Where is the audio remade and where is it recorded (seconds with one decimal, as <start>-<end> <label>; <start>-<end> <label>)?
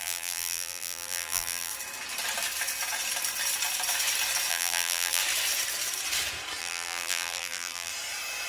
0.0-1.7 remade; 1.7-4.5 recorded; 4.5-5.2 remade; 5.2-6.6 recorded; 6.6-7.9 remade; 7.9-8.5 recorded